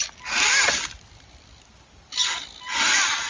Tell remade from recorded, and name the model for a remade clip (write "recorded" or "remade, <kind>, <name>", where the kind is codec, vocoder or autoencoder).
recorded